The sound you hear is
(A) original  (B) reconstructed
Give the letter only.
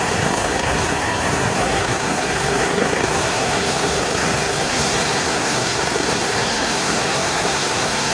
B